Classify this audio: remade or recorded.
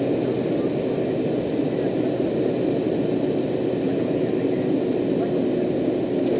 recorded